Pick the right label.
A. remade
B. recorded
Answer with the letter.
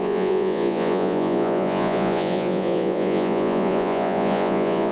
A